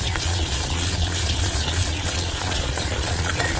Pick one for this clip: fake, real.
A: fake